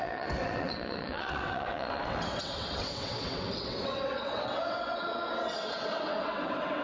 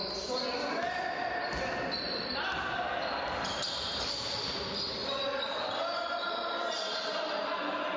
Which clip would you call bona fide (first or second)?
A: second